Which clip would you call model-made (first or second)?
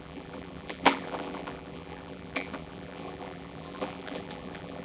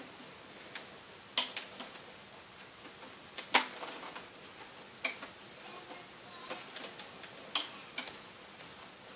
first